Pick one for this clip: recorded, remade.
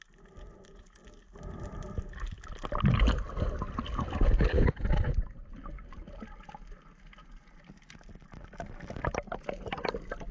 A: recorded